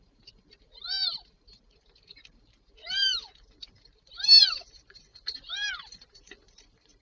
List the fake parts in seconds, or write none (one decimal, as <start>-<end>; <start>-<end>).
0.0-7.0